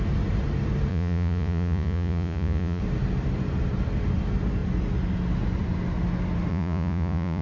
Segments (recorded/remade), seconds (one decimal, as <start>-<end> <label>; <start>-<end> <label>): 0.0-0.9 recorded; 0.9-2.8 remade; 2.8-6.5 recorded; 6.5-7.4 remade